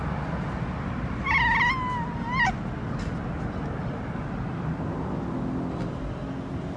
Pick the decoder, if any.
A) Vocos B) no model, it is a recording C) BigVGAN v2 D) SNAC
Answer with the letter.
B